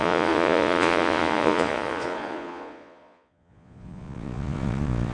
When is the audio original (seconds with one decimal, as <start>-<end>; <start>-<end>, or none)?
none